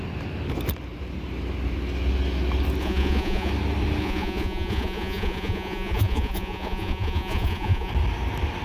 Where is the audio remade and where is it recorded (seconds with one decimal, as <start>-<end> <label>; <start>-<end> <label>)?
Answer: 0.0-2.8 recorded; 2.8-3.5 remade; 3.5-4.0 recorded; 4.0-7.9 remade; 7.9-8.6 recorded